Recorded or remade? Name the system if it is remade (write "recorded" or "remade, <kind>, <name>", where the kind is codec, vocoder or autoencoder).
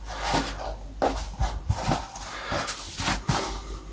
recorded